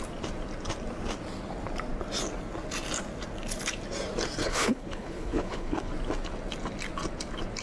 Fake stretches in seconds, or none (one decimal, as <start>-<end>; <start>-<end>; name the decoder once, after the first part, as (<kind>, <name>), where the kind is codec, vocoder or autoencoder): 4.4-5.9 (codec, HILCodec)

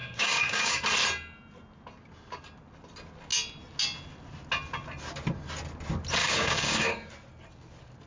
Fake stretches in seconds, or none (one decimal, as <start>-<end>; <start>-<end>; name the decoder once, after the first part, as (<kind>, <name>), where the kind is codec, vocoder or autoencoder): 0.0-0.8 (codec, DAC); 6.2-7.1

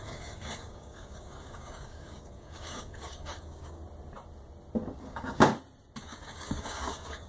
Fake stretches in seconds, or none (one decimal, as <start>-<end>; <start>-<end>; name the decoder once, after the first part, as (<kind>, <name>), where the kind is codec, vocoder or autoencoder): 0.0-3.8 (codec, DAC); 5.0-5.5; 6.0-7.3

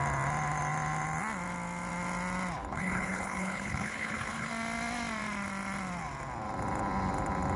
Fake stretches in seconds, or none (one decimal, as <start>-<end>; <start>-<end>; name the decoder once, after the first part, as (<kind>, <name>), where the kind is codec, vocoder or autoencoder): 2.7-4.5 (codec, HILCodec)

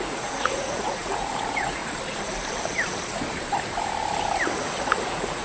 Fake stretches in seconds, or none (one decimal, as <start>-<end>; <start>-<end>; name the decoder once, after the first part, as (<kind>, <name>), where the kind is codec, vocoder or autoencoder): 0.0-1.8 (vocoder, Vocos); 5.0-5.4

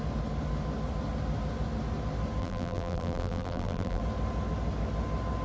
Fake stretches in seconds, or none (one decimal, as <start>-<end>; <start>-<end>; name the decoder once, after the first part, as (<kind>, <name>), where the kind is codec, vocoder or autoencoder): 2.4-4.0 (vocoder, BigVGAN v2)